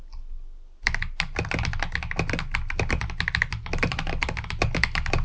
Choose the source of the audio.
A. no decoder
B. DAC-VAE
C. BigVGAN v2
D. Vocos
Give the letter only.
A